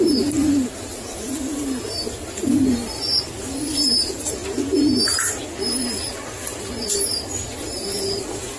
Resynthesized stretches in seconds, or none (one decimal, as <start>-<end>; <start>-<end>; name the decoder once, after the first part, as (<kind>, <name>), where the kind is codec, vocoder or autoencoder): 0.0-4.4 (vocoder, BigVGAN v2); 5.6-8.6